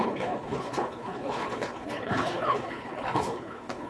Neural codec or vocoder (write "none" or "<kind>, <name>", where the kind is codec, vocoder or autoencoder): codec, HILCodec